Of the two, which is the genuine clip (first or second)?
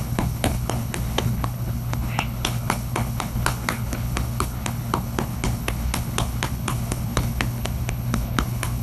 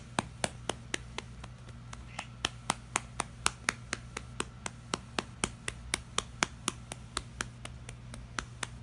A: second